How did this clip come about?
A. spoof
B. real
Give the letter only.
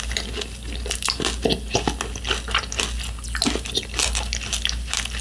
B